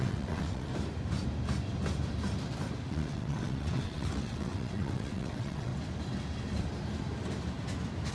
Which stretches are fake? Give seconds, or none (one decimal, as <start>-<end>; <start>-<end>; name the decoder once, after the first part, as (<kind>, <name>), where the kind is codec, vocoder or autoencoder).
0.0-0.7 (vocoder, WaveNeXt); 2.9-5.7